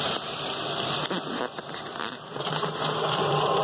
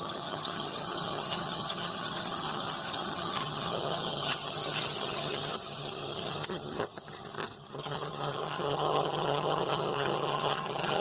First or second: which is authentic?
first